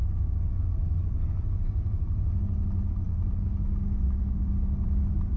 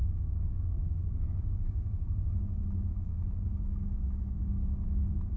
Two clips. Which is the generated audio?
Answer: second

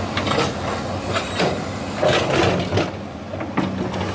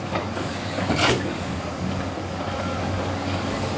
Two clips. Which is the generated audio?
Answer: second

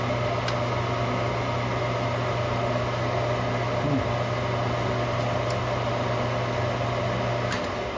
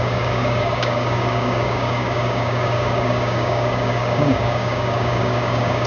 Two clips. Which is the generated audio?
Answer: second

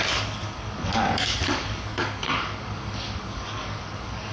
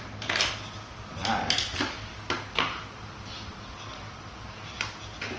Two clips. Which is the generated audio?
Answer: first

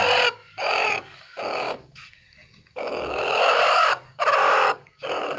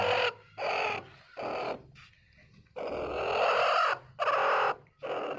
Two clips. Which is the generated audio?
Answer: first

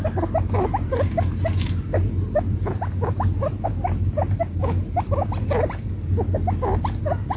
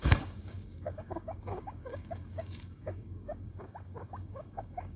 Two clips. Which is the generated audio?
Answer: second